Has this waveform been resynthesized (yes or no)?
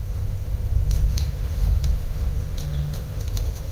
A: yes